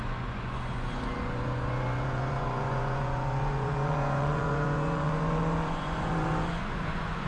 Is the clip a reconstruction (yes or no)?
yes